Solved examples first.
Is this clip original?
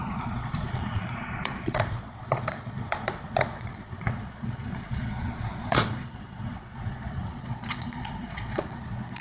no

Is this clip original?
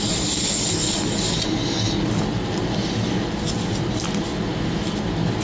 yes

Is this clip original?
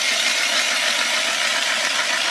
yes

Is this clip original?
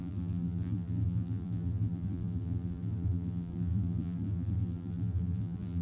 no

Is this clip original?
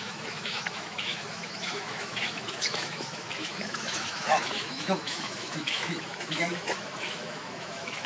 no